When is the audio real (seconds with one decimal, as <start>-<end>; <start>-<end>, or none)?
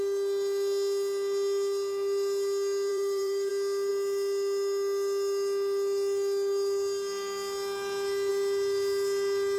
0.0-2.9; 3.5-9.6